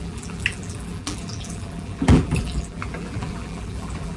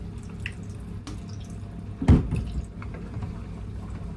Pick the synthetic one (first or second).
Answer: first